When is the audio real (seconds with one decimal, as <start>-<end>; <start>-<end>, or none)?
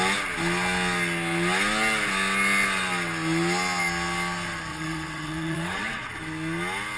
0.0-4.7; 6.1-7.0